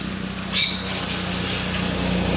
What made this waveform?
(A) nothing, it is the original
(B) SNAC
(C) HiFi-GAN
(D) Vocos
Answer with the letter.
A